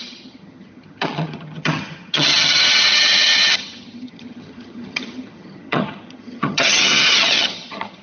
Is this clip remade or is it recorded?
remade